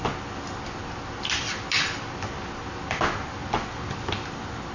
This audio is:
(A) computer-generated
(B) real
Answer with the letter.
B